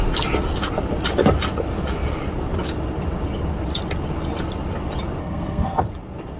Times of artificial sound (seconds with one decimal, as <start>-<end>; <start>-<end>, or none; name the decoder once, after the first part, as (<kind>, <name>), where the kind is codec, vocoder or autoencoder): 5.2-5.8 (codec, SNAC)